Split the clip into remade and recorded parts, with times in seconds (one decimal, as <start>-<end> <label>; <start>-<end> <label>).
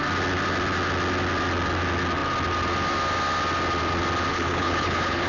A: 0.0-4.3 recorded; 4.3-5.3 remade